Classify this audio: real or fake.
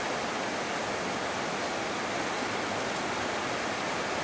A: real